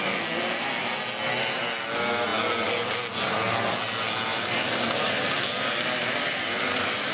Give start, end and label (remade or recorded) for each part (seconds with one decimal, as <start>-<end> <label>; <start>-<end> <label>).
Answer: 0.0-4.3 recorded; 4.3-7.1 remade